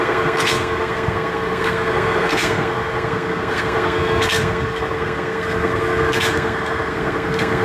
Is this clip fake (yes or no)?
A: yes